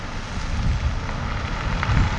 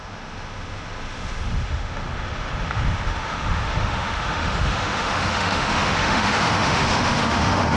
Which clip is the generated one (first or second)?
second